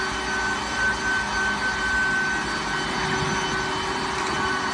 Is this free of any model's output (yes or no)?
yes